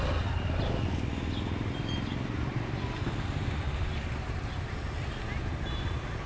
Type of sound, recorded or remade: recorded